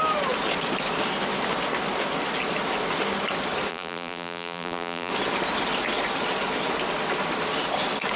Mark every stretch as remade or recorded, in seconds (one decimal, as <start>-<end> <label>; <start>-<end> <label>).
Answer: 0.0-3.7 recorded; 3.7-5.1 remade; 5.1-8.2 recorded